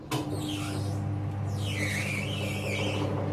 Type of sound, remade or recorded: recorded